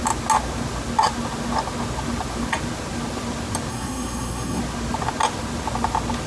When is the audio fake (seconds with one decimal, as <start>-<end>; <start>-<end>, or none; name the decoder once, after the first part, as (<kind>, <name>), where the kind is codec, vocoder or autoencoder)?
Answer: 3.7-4.6 (codec, SNAC)